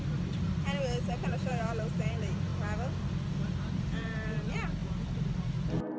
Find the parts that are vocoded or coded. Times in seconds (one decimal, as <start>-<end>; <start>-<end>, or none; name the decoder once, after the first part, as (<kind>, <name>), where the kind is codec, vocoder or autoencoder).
0.0-2.5 (vocoder, BigVGAN v2); 3.3-6.0

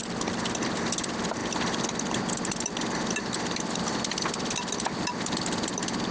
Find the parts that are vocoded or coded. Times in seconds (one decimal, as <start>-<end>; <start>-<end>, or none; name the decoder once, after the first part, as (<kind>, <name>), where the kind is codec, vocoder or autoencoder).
none